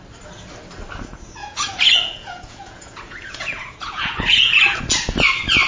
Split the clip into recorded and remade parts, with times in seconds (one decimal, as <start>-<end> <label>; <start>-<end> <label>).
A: 0.0-1.4 recorded; 1.4-4.8 remade; 4.8-5.7 recorded